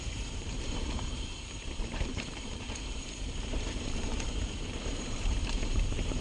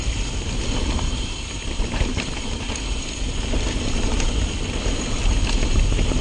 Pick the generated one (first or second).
first